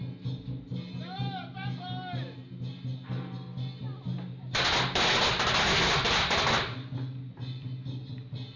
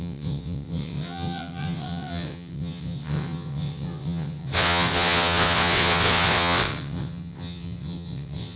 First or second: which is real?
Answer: first